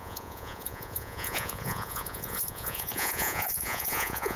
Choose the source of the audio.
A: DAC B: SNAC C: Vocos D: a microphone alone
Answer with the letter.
C